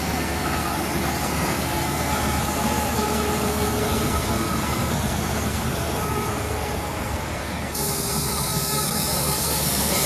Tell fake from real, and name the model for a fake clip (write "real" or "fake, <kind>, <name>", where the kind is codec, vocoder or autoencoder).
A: fake, codec, SNAC